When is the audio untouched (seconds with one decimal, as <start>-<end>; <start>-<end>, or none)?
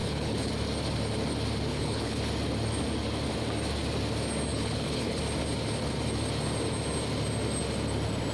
0.5-1.7; 2.3-4.5; 5.2-8.3